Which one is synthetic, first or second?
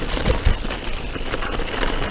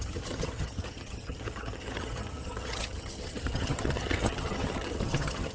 second